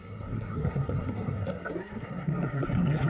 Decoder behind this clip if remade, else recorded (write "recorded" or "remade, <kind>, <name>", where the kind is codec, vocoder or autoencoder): remade, codec, SNAC